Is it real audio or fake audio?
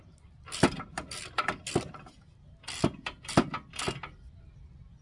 real